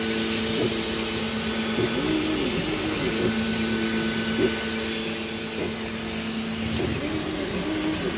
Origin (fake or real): real